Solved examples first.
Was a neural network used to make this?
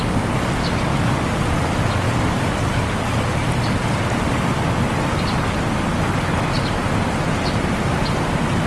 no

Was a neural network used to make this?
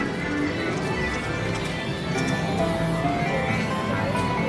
no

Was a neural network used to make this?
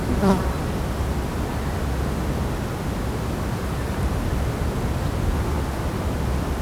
no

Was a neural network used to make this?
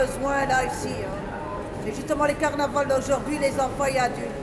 no